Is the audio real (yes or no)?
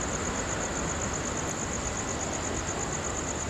yes